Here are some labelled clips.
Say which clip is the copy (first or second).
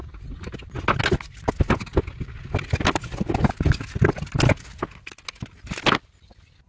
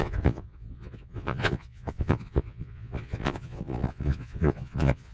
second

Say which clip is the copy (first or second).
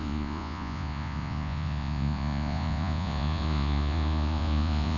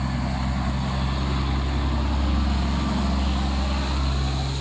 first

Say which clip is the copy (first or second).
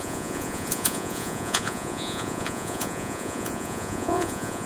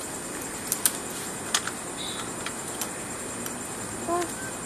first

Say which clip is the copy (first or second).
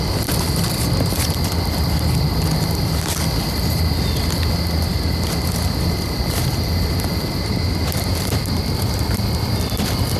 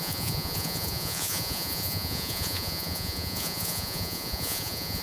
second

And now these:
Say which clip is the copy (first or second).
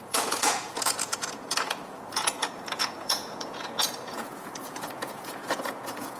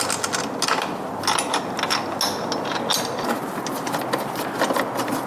first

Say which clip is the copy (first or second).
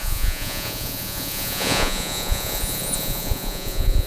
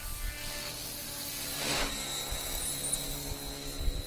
first